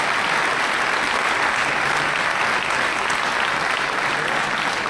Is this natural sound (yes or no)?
yes